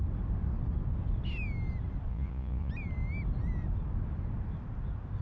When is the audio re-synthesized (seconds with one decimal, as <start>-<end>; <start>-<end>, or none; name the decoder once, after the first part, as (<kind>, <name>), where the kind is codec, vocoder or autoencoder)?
2.1-2.7 (vocoder, Vocos)